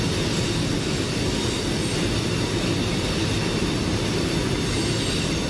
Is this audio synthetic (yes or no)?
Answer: no